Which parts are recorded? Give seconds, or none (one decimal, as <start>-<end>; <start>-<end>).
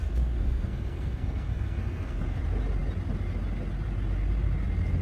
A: 2.4-5.0